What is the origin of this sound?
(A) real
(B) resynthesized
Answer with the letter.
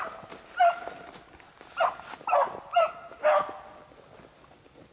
A